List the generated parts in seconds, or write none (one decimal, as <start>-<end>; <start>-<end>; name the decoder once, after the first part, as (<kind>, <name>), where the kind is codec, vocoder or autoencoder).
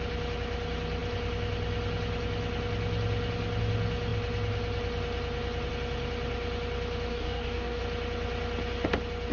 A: 7.1-7.8 (codec, DAC)